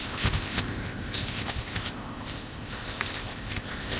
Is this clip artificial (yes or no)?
yes